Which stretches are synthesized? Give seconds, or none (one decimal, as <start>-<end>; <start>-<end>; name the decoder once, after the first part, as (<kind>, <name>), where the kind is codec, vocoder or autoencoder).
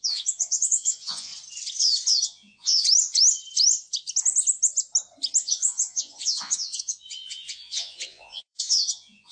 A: 0.0-1.3 (vocoder, Vocos); 2.2-2.8; 5.4-9.3